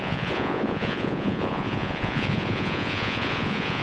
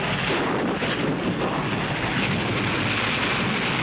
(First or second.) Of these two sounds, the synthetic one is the first